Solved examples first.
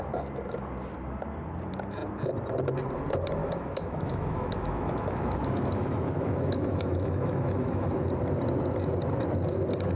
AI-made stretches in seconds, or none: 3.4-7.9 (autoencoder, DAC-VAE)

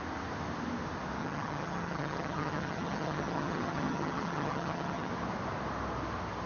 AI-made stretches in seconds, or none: 1.2-5.1 (vocoder, HiFi-GAN)

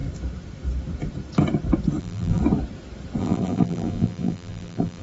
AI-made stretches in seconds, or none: 2.0-2.4 (vocoder, BigVGAN v2); 3.2-5.0

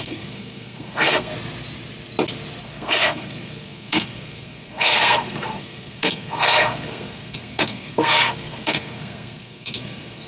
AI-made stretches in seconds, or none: 0.0-1.3 (codec, SNAC); 2.6-10.3

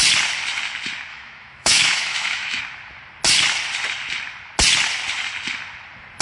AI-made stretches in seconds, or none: 1.1-2.6 (autoencoder, DAC-VAE)

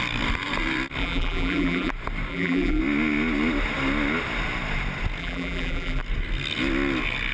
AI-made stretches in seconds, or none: 1.0-1.9 (vocoder, BigVGAN v2); 2.3-2.8; 5.2-6.0

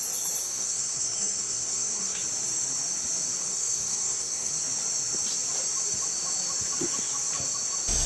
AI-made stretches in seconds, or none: 0.4-2.2 (codec, SNAC); 3.5-4.5